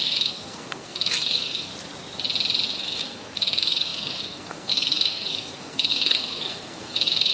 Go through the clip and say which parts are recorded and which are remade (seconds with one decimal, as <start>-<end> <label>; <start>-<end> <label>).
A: 0.0-1.7 remade; 1.7-2.7 recorded; 2.7-7.3 remade